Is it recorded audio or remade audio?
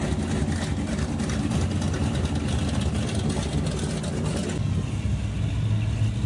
recorded